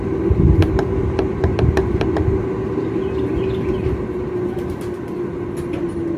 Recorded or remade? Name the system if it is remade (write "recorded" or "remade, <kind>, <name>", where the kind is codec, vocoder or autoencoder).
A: recorded